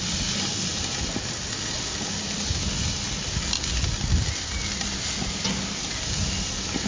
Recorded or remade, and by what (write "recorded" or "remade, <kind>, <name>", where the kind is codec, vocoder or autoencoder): recorded